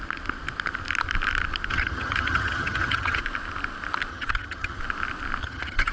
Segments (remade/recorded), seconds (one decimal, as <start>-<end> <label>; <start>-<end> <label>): 0.0-1.7 recorded; 1.7-3.2 remade; 3.2-4.1 recorded; 4.1-4.8 remade; 4.8-5.4 recorded; 5.4-5.9 remade